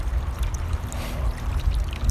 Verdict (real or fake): real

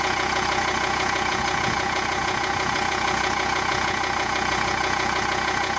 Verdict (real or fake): fake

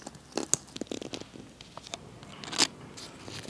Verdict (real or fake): real